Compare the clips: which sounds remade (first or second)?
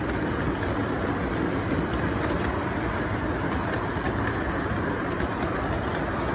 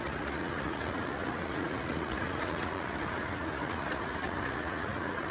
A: second